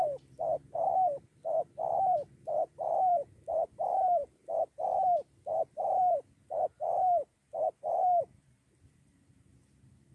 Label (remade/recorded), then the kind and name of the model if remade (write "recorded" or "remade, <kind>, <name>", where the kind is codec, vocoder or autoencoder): remade, vocoder, BigVGAN v2